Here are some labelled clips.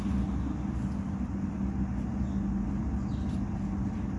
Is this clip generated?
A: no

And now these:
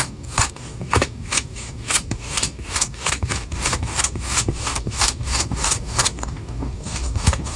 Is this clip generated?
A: yes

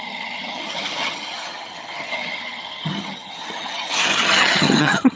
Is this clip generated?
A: yes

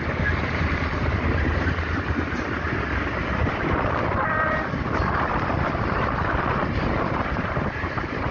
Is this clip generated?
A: yes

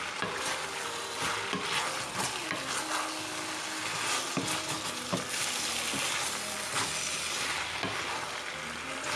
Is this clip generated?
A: no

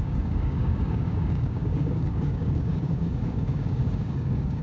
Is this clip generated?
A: yes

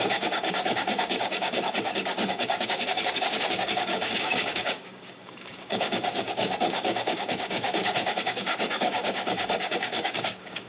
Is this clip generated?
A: yes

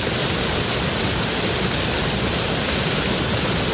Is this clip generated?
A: no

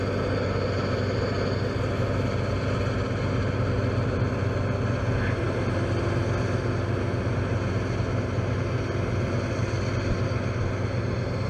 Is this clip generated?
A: no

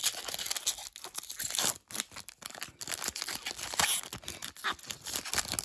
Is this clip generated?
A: no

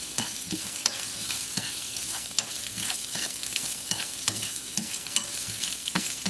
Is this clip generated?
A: yes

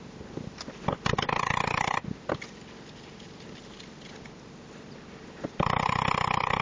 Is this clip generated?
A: no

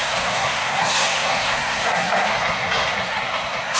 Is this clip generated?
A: yes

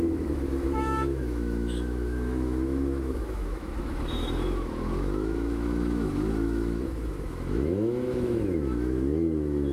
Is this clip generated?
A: yes